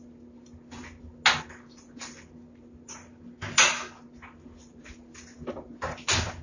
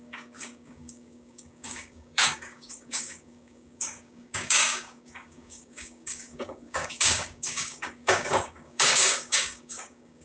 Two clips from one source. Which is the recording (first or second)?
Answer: first